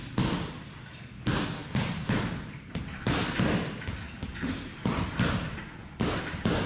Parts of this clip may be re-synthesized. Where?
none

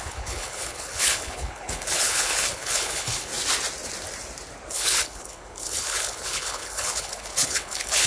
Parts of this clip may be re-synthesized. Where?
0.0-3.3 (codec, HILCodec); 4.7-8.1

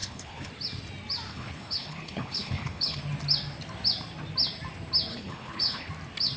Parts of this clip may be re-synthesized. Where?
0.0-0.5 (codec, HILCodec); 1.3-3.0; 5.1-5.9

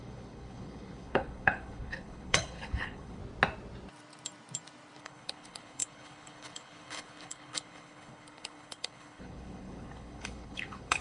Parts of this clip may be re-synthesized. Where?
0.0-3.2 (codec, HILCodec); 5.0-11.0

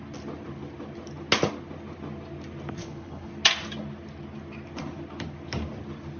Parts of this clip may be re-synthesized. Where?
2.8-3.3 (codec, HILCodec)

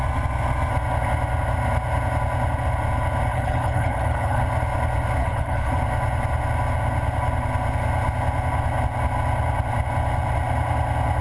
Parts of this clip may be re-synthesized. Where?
3.3-4.4 (codec, HILCodec); 5.2-5.7